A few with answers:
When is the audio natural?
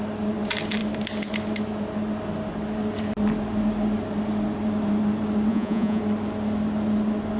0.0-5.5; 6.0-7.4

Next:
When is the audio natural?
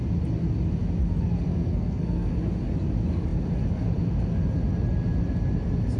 0.0-1.5; 2.3-6.0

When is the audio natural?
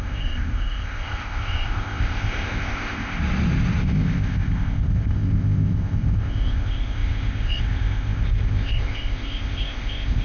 3.2-3.8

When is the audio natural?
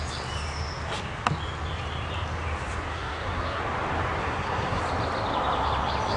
0.0-2.9; 3.6-4.2; 4.8-6.2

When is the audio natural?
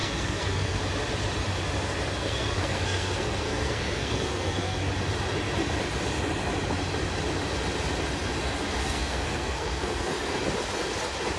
0.8-2.2; 4.9-8.8; 10.1-11.4